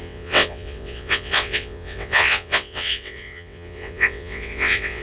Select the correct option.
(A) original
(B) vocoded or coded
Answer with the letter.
B